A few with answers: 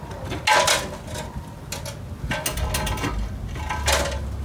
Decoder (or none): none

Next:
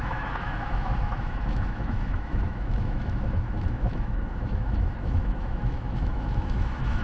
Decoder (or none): autoencoder, DAC-VAE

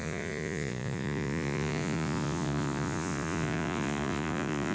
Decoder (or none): vocoder, Vocos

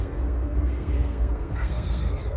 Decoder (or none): codec, SNAC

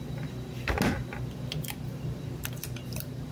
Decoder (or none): none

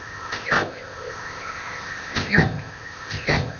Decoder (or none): codec, ZipCodec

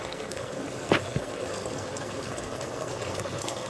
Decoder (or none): codec, SNAC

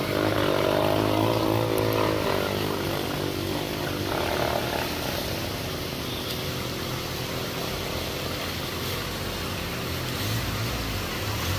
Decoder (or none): none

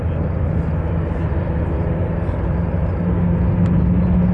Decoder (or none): none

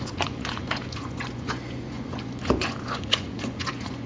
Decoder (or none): vocoder, Vocos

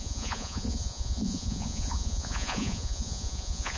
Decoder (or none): vocoder, Vocos